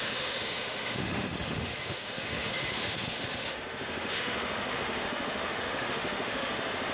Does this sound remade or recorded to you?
remade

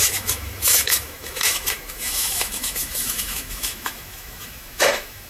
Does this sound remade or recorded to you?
remade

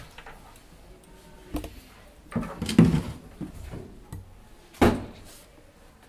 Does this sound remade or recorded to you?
recorded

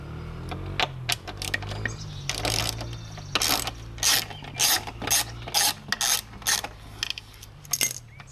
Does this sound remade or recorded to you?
recorded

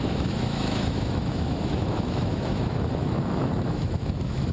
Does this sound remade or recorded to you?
remade